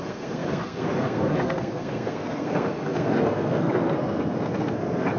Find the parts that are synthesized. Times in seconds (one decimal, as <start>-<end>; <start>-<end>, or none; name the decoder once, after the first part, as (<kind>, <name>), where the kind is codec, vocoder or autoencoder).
0.0-5.2 (codec, SNAC)